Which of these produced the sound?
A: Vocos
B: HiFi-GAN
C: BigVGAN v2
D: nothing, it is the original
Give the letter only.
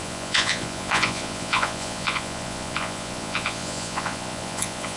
A